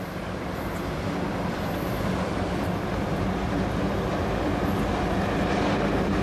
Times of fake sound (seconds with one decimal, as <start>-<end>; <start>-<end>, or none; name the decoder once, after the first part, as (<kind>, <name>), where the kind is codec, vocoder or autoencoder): 0.8-4.5 (vocoder, BigVGAN v2)